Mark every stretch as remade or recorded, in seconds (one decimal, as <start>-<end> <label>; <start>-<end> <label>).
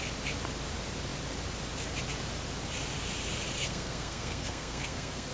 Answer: 0.0-3.6 recorded; 3.6-5.3 remade